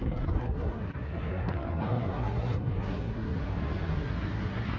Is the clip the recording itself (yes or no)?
no